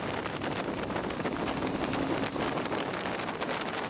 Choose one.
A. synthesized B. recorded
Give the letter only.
B